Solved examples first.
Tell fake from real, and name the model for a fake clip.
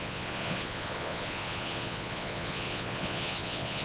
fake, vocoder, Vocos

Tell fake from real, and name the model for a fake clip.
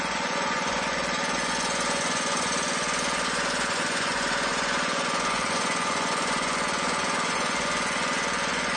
fake, vocoder, Vocos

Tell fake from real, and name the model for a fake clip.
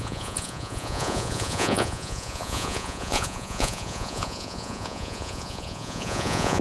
fake, vocoder, Vocos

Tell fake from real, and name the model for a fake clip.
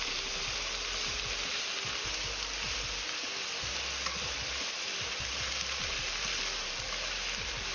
real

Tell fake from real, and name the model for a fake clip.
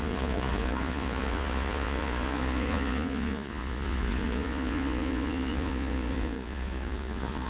fake, vocoder, Vocos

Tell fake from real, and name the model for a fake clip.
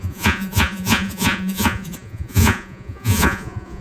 fake, vocoder, Vocos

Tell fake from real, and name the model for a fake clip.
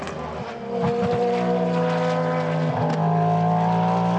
real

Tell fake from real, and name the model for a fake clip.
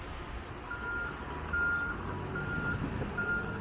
real